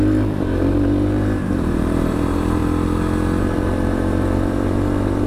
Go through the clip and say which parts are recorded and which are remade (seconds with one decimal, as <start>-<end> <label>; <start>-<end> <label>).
0.0-2.6 remade; 2.6-3.4 recorded; 3.4-5.3 remade